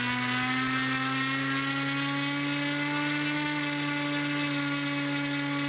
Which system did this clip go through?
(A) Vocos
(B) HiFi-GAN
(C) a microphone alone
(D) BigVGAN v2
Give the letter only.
C